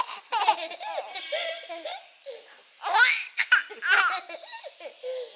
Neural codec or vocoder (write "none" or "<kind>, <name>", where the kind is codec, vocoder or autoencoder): none